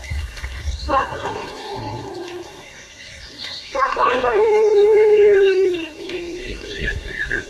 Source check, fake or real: fake